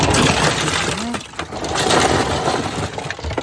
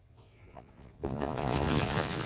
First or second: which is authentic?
first